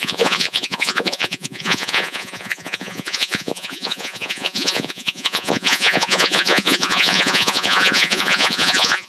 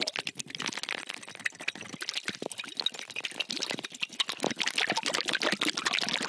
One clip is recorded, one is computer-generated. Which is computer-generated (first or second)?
first